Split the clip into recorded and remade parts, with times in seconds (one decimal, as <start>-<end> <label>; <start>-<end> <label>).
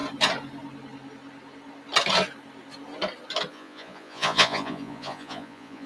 0.0-3.5 recorded; 3.5-5.9 remade